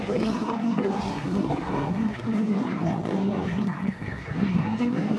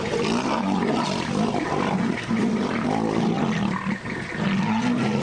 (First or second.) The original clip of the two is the second